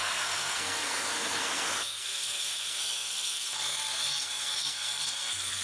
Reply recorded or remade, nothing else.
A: remade